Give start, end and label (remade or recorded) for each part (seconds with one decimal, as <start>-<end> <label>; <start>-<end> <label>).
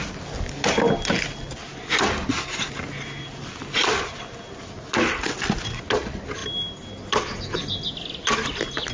0.0-8.9 recorded